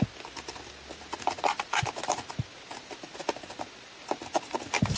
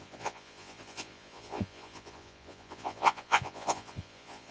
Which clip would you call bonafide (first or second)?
first